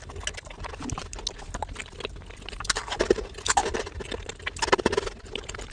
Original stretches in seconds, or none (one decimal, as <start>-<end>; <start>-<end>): 0.0-5.7